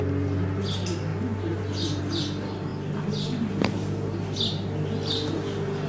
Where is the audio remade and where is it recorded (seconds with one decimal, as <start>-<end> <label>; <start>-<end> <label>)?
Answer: 0.0-5.9 recorded